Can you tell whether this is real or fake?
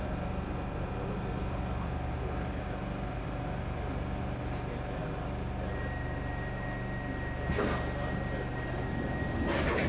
real